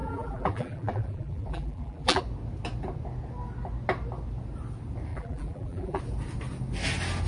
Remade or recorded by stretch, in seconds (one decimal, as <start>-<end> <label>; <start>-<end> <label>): 0.0-2.2 remade; 2.2-5.1 recorded; 5.1-6.0 remade; 6.0-7.3 recorded